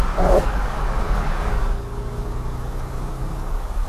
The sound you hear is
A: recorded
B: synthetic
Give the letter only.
B